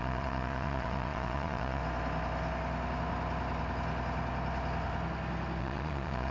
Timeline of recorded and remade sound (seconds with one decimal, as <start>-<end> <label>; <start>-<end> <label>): 0.0-1.8 remade; 1.8-5.6 recorded; 5.6-6.3 remade